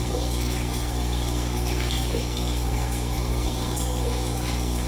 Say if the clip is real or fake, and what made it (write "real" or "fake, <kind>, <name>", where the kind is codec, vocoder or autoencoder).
fake, codec, SNAC